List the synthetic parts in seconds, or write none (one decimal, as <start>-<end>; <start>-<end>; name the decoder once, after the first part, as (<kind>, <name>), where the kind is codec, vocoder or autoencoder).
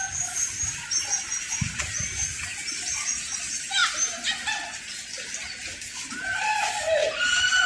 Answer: none